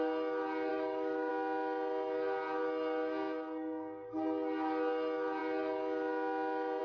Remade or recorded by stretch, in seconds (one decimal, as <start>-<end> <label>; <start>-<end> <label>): 0.0-0.7 recorded; 0.7-1.3 remade; 1.3-6.8 recorded